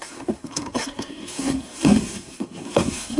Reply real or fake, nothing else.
fake